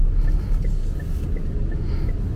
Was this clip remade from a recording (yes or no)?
no